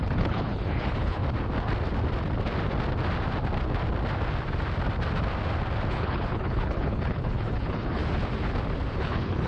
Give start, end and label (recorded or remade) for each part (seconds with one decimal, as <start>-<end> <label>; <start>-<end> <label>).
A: 0.0-1.2 remade; 1.2-5.9 recorded; 5.9-8.0 remade; 8.0-9.0 recorded; 9.0-9.5 remade